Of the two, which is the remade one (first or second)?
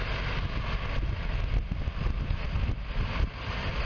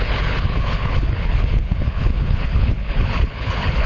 second